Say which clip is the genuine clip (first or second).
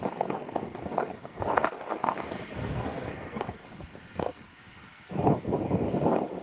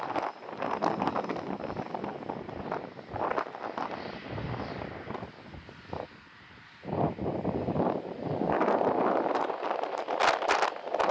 second